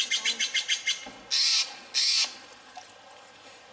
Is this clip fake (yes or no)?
no